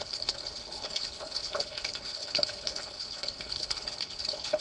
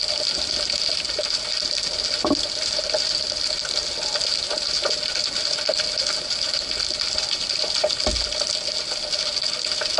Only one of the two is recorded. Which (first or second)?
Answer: second